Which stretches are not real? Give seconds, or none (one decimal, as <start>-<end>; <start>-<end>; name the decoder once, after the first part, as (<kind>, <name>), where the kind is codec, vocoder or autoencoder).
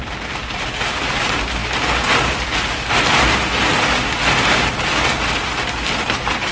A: none